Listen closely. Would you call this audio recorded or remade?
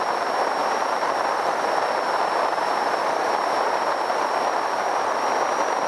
recorded